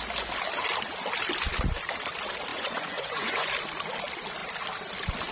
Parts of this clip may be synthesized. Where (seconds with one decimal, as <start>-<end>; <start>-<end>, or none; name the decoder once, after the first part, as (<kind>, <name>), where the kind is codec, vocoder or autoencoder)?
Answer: 2.5-3.5 (vocoder, Vocos)

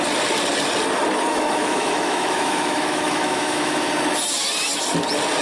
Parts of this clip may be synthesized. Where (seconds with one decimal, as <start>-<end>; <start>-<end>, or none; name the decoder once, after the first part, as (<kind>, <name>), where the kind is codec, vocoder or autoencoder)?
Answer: 1.3-3.9 (autoencoder, DAC-VAE)

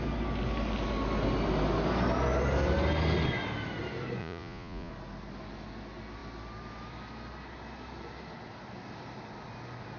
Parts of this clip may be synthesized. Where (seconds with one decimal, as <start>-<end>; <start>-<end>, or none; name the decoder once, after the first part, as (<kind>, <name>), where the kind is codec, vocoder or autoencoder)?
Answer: 4.2-4.9 (vocoder, Vocos)

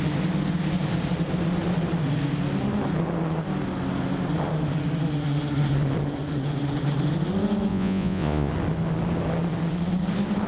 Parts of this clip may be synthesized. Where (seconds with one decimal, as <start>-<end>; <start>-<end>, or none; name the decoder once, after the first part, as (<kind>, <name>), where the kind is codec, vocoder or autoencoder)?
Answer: 7.7-8.5 (vocoder, Vocos)

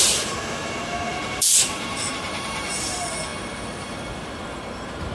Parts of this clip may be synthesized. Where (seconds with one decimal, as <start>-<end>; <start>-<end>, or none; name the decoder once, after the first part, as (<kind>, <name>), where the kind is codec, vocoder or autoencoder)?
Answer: 0.0-5.1 (vocoder, BigVGAN v2)

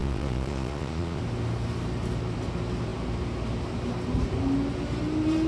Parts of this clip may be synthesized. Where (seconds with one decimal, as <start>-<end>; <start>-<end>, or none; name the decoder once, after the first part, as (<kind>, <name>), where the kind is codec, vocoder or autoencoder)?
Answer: 0.0-1.2 (vocoder, Vocos)